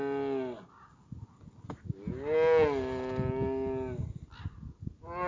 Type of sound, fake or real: real